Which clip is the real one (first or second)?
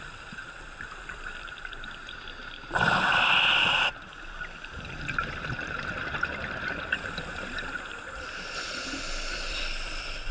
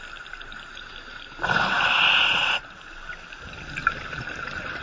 second